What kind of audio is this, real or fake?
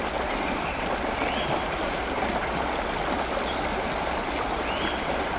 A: real